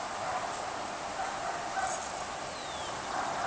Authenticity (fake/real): real